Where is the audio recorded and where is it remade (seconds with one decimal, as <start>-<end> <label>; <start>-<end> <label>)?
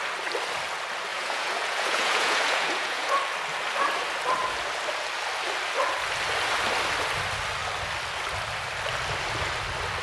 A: 0.0-1.1 recorded; 1.1-3.2 remade; 3.2-10.0 recorded